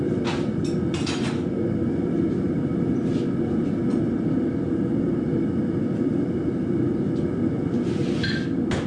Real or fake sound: real